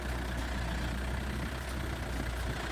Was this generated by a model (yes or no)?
no